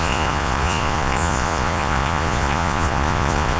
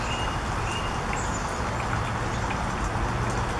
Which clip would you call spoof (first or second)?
first